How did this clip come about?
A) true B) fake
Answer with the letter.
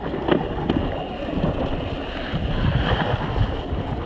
A